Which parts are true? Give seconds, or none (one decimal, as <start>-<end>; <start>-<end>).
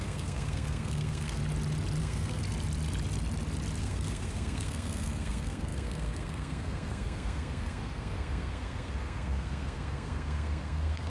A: 1.4-2.0; 2.4-3.8